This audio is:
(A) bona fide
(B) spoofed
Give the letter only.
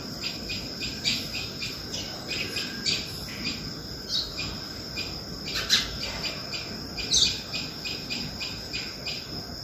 A